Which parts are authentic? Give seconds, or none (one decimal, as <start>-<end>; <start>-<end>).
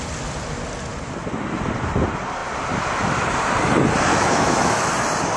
0.0-4.1; 4.9-5.4